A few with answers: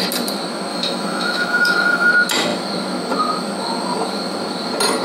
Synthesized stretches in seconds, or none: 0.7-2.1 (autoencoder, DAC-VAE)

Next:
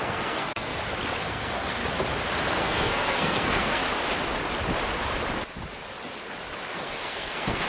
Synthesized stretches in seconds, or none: 0.0-0.7 (codec, SNAC); 1.2-1.8; 2.5-3.8; 6.7-7.7

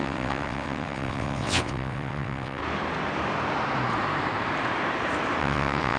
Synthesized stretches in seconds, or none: 0.0-2.6 (vocoder, WaveNeXt); 5.4-6.0

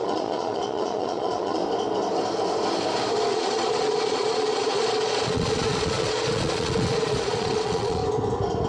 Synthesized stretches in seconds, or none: 0.0-1.6 (vocoder, Vocos); 3.3-8.0